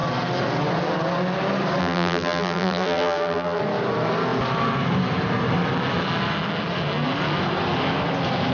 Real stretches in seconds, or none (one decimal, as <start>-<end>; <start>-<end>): 0.0-1.8; 3.6-8.5